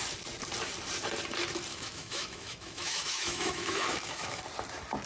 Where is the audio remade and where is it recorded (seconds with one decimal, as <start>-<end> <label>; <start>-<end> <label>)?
0.0-1.7 recorded; 1.7-4.4 remade; 4.4-5.1 recorded